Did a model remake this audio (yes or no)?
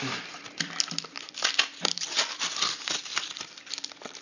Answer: yes